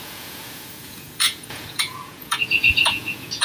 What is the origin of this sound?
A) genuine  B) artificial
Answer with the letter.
B